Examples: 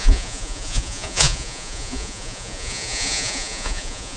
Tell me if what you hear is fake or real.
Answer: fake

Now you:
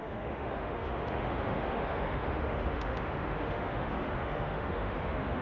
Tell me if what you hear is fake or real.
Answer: fake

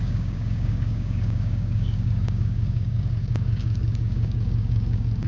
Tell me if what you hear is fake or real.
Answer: fake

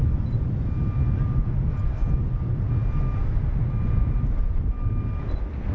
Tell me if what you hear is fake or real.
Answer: real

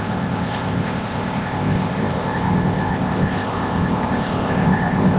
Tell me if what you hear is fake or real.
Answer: fake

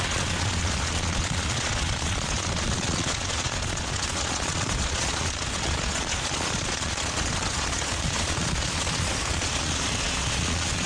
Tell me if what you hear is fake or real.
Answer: fake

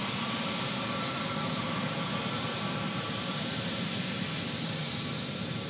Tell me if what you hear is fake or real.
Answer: fake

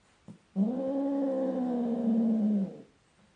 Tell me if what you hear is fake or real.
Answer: real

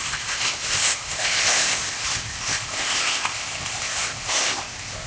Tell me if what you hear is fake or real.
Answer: fake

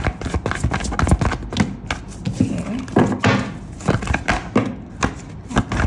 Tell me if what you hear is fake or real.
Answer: real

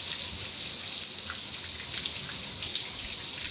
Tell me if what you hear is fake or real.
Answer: real